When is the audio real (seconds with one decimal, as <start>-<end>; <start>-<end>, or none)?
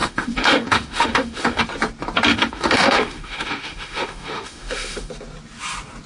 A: 1.6-2.3; 5.1-6.1